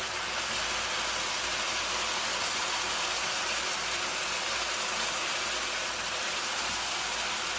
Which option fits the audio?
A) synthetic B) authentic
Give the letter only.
B